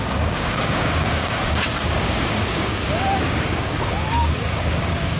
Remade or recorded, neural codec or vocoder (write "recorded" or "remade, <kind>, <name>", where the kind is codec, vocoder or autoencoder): remade, codec, DAC